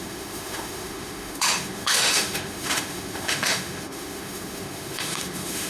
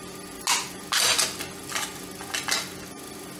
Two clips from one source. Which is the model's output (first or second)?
first